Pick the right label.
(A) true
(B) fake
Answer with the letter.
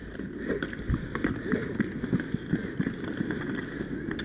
A